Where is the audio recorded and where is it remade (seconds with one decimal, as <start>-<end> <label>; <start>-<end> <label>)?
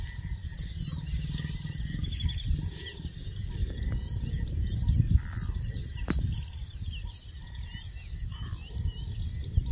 0.0-9.7 recorded